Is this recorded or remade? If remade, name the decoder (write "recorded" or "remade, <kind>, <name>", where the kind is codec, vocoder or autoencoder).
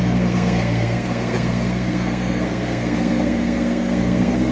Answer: remade, codec, SNAC